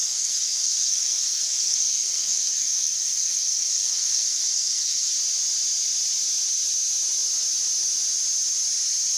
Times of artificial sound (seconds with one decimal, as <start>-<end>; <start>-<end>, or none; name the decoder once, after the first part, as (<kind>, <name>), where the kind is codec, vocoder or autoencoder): 0.0-5.1 (codec, SNAC)